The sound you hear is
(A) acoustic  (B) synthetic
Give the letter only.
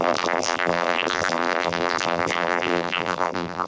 B